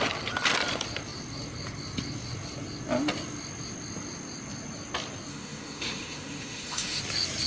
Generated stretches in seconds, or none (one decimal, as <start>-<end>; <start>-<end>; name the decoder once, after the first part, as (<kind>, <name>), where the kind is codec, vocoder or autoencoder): 5.3-7.0 (autoencoder, DAC-VAE)